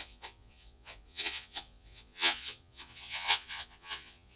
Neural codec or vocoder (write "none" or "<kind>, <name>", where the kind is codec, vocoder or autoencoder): vocoder, Vocos